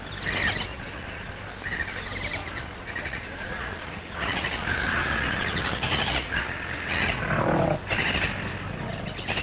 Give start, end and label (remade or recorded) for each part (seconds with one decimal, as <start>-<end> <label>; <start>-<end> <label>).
0.0-0.7 recorded; 0.7-1.3 remade; 1.3-2.4 recorded; 2.4-7.2 remade; 7.2-9.4 recorded